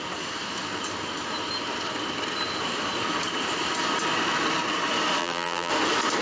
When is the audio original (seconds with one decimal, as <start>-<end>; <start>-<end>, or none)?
0.0-5.2; 5.7-6.2